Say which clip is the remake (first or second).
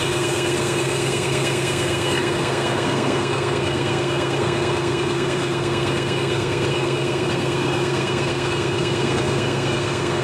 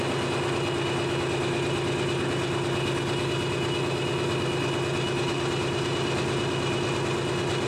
first